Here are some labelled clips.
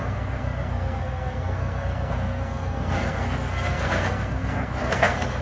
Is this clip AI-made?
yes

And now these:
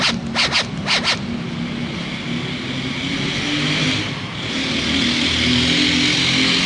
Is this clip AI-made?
no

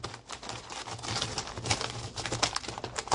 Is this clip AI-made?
no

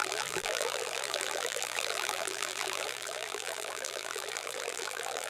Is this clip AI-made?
yes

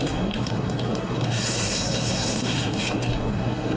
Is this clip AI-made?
yes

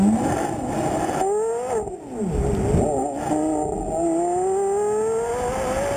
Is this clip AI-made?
no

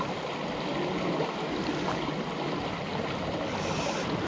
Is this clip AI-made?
no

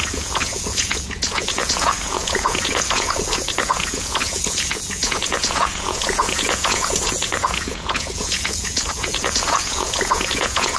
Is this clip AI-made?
yes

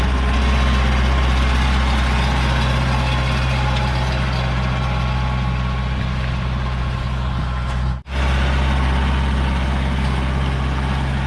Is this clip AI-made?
no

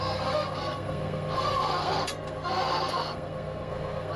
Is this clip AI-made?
yes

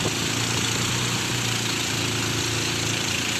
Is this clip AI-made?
no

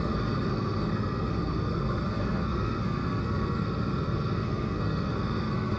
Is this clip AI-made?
yes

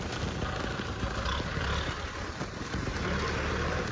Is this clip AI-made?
no